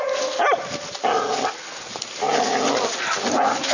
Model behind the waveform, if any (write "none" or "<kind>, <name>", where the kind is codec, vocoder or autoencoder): none